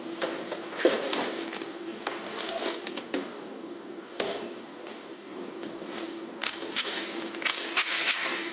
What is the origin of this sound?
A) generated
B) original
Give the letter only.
A